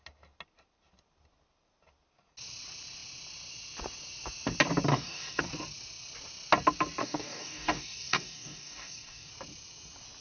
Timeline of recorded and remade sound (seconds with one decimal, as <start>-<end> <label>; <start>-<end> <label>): 0.0-4.9 recorded; 4.9-5.4 remade; 5.4-7.0 recorded; 7.0-9.3 remade; 9.3-10.2 recorded